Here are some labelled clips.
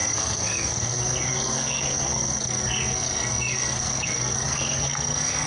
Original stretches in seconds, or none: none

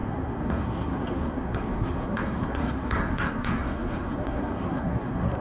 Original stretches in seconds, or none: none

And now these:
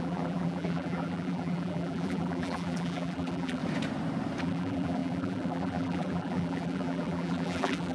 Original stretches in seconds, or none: 3.6-4.4

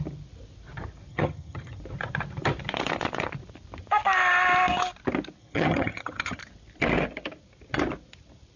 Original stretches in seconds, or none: 0.0-1.1; 1.8-5.4; 6.4-8.6

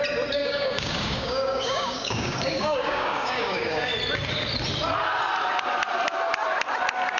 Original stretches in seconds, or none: 0.0-0.4; 4.0-7.2